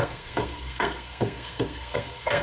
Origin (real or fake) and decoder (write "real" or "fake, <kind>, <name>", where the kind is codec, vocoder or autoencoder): fake, codec, SNAC